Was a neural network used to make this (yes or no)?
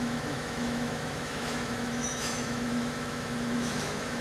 yes